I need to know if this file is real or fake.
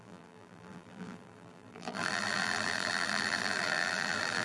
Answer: fake